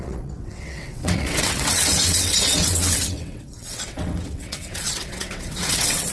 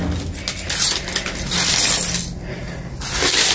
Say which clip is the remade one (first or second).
first